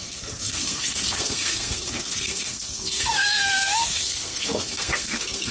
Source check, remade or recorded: remade